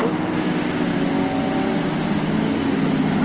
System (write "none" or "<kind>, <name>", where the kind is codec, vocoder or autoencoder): none